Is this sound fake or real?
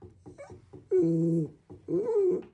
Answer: real